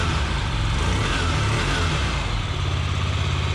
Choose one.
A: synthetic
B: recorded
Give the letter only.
B